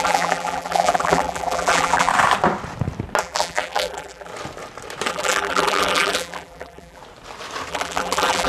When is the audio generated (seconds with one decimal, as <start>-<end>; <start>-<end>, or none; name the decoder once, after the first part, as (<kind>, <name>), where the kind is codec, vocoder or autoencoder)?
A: 0.0-2.1 (vocoder, BigVGAN v2); 3.2-4.3; 5.1-7.0; 7.7-8.5